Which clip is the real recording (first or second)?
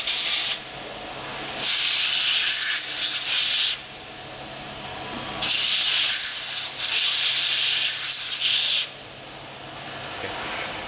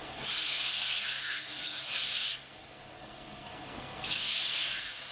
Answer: first